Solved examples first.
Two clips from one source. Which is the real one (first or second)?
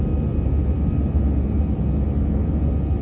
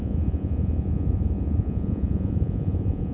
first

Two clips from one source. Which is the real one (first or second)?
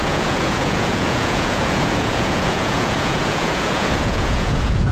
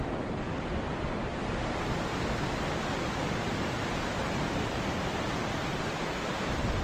second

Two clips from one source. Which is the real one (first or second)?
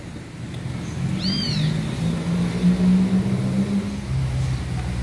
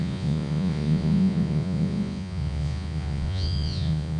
first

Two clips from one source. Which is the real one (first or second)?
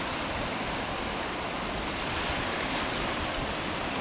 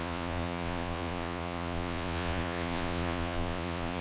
first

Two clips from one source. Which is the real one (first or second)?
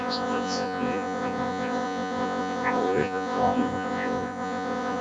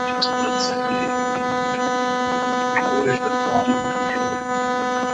second